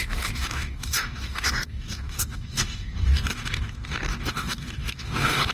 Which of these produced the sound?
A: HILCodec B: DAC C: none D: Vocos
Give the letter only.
B